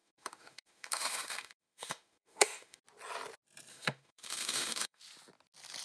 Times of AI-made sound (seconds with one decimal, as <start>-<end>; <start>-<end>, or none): 0.0-2.8; 3.7-5.0